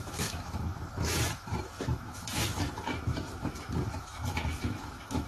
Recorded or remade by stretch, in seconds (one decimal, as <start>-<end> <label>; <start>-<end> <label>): 0.0-5.3 remade